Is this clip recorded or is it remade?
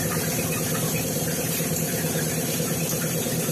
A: remade